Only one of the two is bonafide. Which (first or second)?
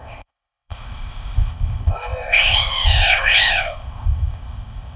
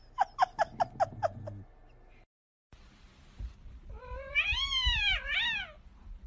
second